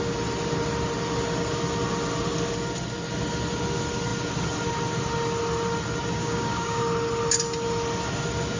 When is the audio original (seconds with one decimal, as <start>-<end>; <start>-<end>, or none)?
0.0-6.2; 6.8-8.6